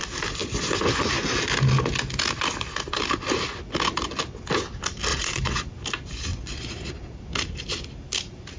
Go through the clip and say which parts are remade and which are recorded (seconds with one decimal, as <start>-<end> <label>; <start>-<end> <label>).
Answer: 0.0-5.1 recorded; 5.1-5.6 remade; 5.6-6.3 recorded; 6.3-7.2 remade; 7.2-8.6 recorded